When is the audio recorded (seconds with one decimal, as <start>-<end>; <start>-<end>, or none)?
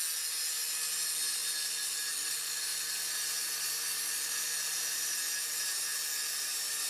0.0-6.9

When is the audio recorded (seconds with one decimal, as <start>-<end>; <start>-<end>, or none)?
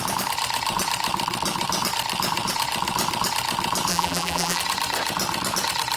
0.0-3.9; 4.6-6.0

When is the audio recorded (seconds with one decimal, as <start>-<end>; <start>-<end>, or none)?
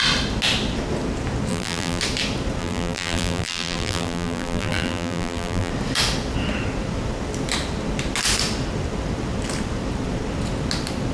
0.0-1.5; 2.0-2.6; 5.7-11.1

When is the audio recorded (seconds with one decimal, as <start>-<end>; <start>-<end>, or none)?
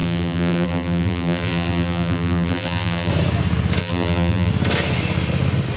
3.1-3.8; 4.5-5.8